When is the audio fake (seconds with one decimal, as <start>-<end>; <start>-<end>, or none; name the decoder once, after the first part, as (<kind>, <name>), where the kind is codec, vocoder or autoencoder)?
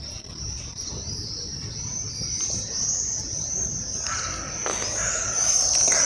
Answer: none